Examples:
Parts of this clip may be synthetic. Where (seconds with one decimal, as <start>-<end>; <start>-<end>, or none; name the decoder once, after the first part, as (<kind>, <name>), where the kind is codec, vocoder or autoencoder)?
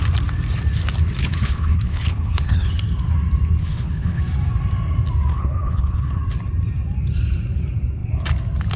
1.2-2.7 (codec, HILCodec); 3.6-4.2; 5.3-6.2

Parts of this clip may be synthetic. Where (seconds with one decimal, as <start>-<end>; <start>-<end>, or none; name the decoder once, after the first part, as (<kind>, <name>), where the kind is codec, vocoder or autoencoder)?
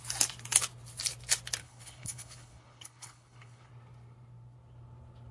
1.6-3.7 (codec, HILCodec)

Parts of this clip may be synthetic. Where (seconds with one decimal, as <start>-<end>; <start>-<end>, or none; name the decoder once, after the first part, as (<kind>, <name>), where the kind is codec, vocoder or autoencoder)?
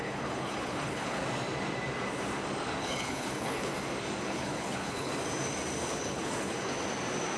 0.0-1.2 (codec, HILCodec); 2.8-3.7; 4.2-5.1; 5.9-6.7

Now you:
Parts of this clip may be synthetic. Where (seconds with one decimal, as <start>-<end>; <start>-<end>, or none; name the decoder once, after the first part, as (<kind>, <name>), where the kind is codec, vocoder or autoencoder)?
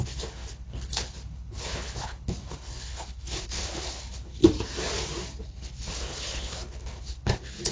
0.0-4.4 (codec, HILCodec); 5.4-7.7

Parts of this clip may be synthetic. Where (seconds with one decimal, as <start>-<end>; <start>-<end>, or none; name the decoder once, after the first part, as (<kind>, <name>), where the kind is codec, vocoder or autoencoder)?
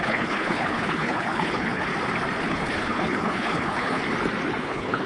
0.0-1.9 (codec, HILCodec); 2.4-4.0; 4.6-5.1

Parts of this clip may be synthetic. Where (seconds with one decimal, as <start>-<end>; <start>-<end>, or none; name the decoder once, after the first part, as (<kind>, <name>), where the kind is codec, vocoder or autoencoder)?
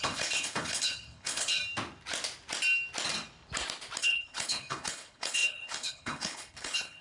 0.0-1.6 (codec, HILCodec); 4.0-7.0